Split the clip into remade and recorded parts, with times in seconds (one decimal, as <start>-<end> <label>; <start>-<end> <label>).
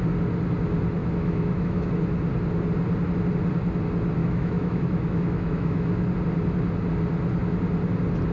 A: 0.0-1.0 recorded; 1.0-1.9 remade; 1.9-4.2 recorded; 4.2-5.9 remade; 5.9-8.3 recorded